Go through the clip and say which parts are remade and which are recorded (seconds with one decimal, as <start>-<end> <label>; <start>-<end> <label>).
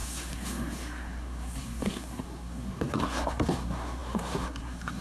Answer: 0.0-5.0 remade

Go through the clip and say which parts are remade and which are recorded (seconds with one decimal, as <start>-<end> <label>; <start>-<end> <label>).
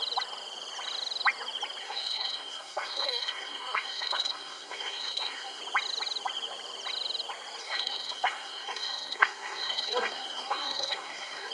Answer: 0.0-1.8 recorded; 1.8-5.6 remade; 5.6-7.6 recorded; 7.6-11.5 remade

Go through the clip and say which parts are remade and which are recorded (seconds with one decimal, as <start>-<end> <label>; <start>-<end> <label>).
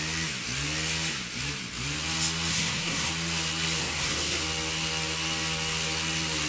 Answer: 0.0-2.5 recorded; 2.5-3.1 remade; 3.1-3.8 recorded; 3.8-4.4 remade; 4.4-6.5 recorded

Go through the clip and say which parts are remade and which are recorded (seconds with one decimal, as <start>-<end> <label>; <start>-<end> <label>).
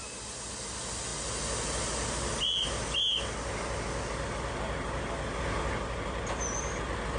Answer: 0.0-7.2 recorded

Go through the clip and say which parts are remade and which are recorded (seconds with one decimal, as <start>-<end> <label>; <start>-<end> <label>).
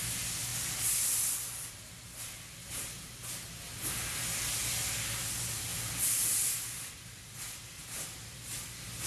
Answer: 0.0-9.1 recorded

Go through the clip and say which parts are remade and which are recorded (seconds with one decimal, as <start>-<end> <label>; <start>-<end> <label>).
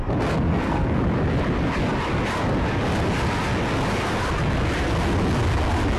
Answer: 0.0-0.5 recorded; 0.5-1.0 remade; 1.0-6.0 recorded